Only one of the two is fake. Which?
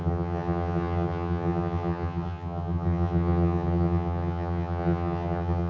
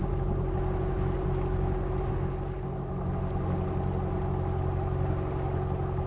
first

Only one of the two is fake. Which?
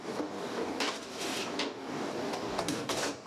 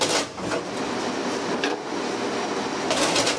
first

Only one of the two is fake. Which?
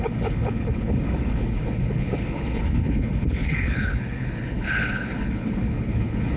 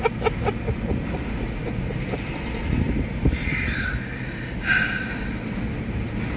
first